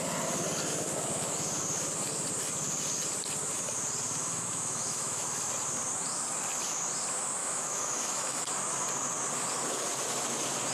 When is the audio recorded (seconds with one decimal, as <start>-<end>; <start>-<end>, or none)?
0.0-4.2; 5.5-7.4; 8.4-10.7